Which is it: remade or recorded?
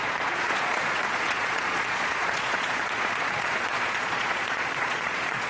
remade